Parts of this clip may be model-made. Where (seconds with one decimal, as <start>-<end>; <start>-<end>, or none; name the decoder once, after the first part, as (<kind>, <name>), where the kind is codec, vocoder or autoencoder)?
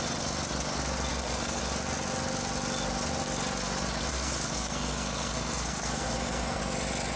1.1-1.6 (codec, SNAC); 4.1-6.6